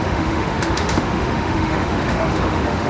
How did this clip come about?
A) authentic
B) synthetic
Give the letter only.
B